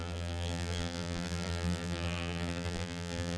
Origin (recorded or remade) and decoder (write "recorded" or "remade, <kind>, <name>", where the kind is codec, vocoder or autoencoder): remade, vocoder, BigVGAN v2